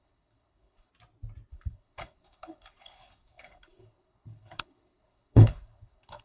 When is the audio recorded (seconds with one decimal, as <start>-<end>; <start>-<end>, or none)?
0.9-1.5